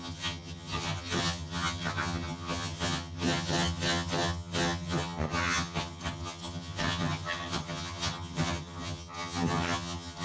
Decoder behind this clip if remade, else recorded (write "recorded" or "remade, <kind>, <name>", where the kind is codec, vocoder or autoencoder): remade, vocoder, HiFi-GAN